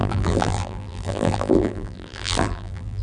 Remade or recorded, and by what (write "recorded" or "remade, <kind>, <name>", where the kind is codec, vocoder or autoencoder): remade, vocoder, BigVGAN v2